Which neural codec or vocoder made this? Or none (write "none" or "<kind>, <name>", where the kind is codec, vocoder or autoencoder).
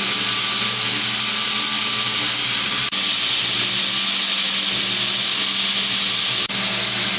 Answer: none